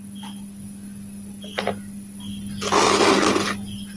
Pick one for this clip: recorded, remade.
recorded